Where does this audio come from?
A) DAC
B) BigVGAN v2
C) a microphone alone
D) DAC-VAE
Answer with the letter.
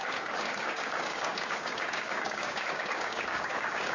A